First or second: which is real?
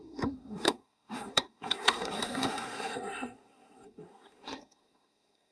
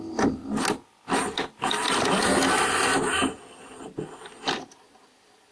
second